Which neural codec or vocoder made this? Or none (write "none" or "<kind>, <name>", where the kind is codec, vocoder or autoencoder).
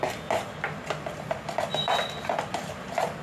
none